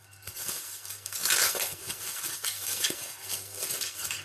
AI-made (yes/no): yes